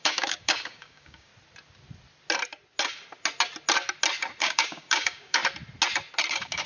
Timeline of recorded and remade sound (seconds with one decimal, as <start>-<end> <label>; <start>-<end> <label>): 0.0-1.3 remade; 1.3-4.4 recorded; 4.4-5.4 remade; 5.4-6.3 recorded; 6.3-6.7 remade